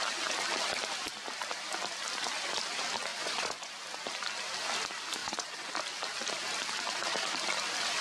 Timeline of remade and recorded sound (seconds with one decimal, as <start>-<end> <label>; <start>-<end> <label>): 0.0-3.1 recorded; 3.1-3.7 remade; 3.7-5.2 recorded; 5.2-5.7 remade; 5.7-8.0 recorded